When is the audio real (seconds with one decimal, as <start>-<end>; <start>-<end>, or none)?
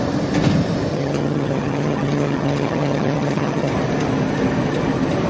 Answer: 0.0-0.9; 3.7-5.3